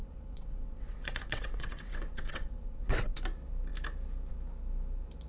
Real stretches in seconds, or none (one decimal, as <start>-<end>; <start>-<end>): 3.2-5.3